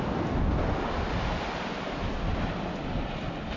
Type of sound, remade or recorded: recorded